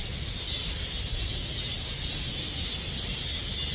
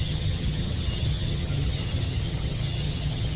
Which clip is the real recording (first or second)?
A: first